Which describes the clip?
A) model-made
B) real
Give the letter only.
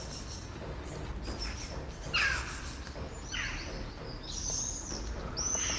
B